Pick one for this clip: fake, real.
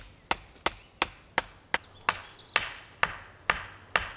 real